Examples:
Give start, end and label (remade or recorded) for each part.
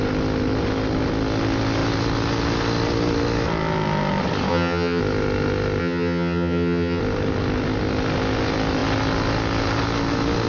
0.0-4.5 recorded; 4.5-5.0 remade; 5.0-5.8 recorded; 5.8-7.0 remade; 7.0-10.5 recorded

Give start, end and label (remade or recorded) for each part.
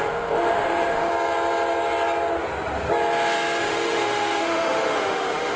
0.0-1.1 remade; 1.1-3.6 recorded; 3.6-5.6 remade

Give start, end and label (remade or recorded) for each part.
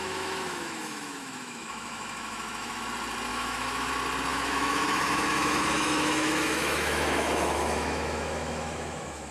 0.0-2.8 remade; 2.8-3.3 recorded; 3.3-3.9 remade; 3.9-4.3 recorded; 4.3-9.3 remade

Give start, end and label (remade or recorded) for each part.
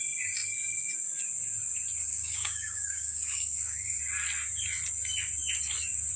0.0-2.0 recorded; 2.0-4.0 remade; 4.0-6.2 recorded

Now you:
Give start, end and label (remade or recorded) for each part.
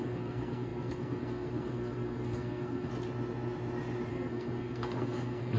0.0-2.9 remade; 2.9-4.1 recorded; 4.1-5.6 remade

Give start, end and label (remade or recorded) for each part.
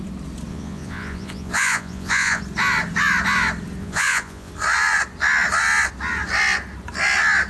0.0-0.5 recorded; 0.5-2.4 remade; 2.4-3.8 recorded; 3.8-4.5 remade; 4.5-7.5 recorded